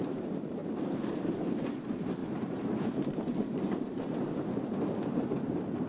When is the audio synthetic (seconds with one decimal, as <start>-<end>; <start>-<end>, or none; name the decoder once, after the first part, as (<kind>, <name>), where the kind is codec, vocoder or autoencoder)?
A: 0.0-5.9 (vocoder, BigVGAN v2)